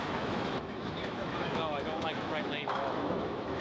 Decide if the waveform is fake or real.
fake